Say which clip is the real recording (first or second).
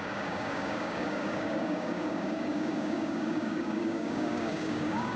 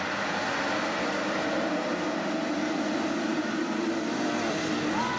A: second